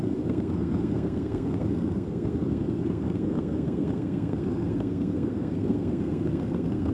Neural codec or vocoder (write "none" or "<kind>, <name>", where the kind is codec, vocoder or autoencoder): codec, SNAC